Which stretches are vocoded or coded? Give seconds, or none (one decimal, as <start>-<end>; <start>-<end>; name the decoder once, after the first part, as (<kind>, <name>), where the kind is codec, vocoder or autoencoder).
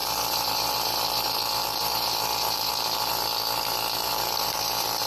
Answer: 0.0-3.1 (vocoder, BigVGAN v2); 4.0-5.1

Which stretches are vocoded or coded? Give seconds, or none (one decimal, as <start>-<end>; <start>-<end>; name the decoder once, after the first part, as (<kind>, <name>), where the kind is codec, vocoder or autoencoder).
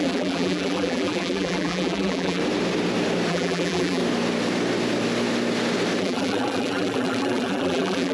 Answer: 0.0-2.4 (vocoder, BigVGAN v2); 3.3-4.0; 6.0-8.1